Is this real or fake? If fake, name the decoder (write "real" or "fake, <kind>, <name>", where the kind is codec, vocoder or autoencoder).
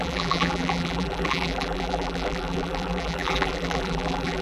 fake, vocoder, BigVGAN v2